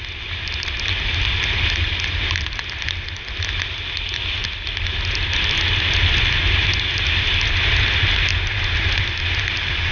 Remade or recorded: recorded